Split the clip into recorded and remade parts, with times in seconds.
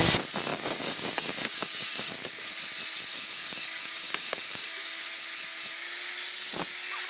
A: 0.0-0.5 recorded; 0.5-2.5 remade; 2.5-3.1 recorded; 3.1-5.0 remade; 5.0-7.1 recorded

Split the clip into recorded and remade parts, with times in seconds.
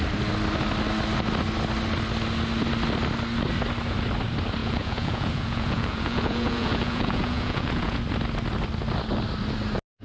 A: 0.0-4.6 recorded; 4.6-8.0 remade; 8.0-10.0 recorded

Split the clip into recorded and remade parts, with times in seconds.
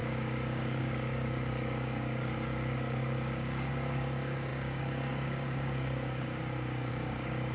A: 0.0-7.5 remade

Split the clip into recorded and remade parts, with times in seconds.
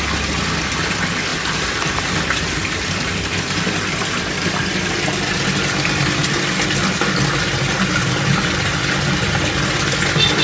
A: 0.0-1.3 recorded; 1.3-4.5 remade; 4.5-10.4 recorded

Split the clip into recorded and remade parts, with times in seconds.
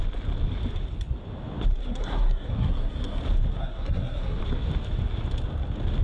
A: 0.0-1.8 recorded; 1.8-3.2 remade; 3.2-3.6 recorded; 3.6-4.4 remade; 4.4-6.0 recorded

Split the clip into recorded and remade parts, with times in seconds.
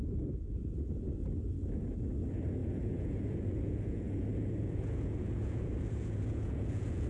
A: 0.0-2.6 recorded; 2.6-7.1 remade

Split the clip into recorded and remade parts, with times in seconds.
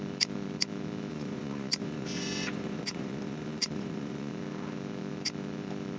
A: 0.0-1.1 recorded; 1.1-4.3 remade; 4.3-6.0 recorded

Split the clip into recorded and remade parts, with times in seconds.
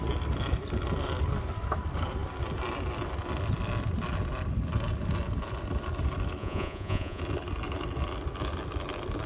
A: 0.0-6.4 recorded; 6.4-7.2 remade; 7.2-9.3 recorded